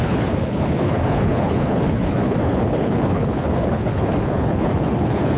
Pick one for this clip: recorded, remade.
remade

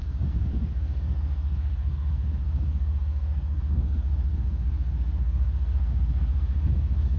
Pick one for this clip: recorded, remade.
remade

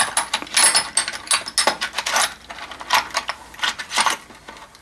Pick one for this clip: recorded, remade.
recorded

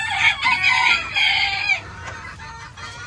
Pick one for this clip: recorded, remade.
recorded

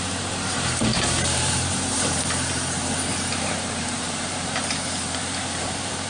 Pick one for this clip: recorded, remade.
remade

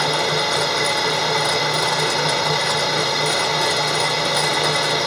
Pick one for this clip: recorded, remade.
recorded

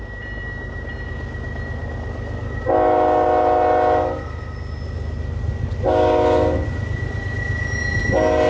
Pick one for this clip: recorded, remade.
recorded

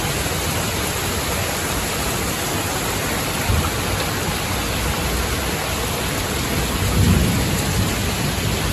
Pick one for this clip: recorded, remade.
recorded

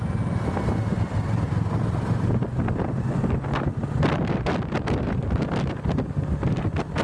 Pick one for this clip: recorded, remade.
recorded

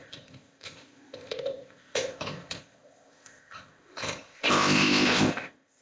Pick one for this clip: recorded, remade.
remade